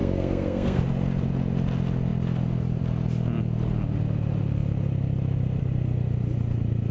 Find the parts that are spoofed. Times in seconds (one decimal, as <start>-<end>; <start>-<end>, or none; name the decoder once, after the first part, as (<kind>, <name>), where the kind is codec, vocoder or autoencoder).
0.0-0.8 (codec, SNAC)